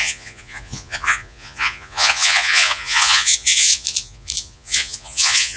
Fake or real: fake